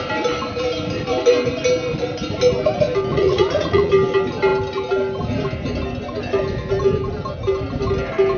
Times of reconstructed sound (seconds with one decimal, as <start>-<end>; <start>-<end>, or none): 3.1-3.9